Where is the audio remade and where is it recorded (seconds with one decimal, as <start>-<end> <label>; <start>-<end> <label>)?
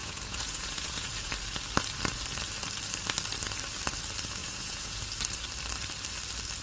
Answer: 0.0-1.3 remade; 1.3-4.4 recorded; 4.4-5.0 remade; 5.0-6.6 recorded